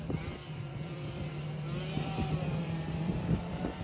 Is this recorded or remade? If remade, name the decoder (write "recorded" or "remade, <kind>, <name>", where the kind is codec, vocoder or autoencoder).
remade, vocoder, BigVGAN v2